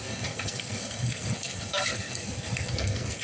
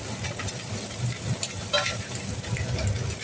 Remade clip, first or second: first